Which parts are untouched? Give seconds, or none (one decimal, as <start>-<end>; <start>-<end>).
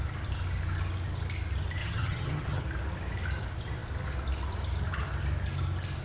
0.0-1.8; 2.6-6.0